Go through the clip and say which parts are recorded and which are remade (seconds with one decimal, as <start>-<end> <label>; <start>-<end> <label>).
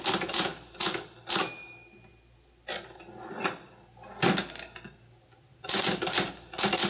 0.0-6.9 recorded